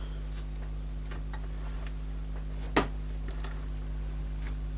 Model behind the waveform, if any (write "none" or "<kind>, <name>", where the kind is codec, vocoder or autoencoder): none